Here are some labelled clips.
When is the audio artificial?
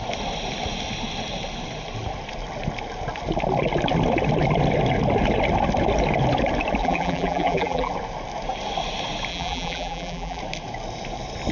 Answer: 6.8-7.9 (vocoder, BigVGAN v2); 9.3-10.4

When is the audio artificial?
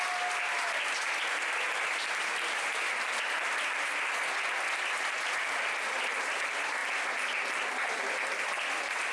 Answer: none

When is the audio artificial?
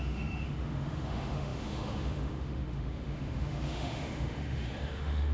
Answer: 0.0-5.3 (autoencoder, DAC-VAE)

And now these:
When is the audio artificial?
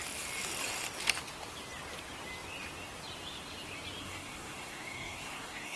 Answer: 4.0-5.8 (codec, SNAC)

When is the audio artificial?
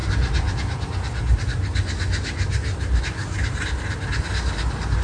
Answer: none